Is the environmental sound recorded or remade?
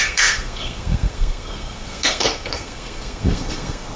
remade